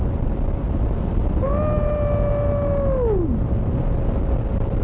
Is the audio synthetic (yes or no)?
no